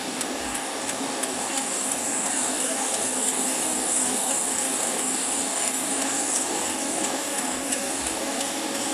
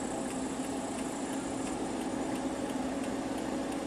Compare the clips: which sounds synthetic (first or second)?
first